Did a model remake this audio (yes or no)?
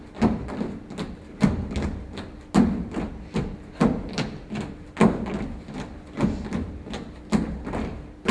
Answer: no